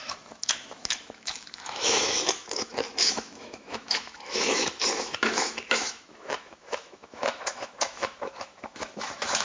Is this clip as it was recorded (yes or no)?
no